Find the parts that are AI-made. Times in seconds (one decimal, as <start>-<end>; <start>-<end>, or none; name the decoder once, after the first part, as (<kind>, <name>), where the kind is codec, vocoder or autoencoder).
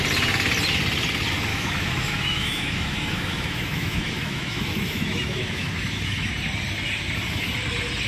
1.5-6.3 (autoencoder, DAC-VAE)